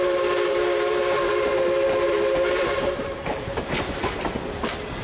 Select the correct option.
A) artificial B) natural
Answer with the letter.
A